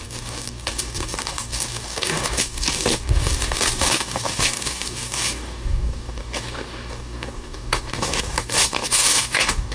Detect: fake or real fake